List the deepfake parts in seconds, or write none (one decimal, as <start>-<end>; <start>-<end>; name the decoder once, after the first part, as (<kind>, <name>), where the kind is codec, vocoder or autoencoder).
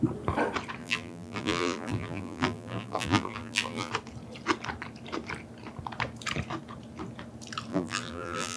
0.8-3.9 (vocoder, BigVGAN v2); 7.7-8.6